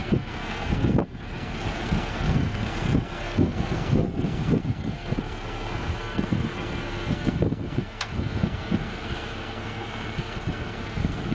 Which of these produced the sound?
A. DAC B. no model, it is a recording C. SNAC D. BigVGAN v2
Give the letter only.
C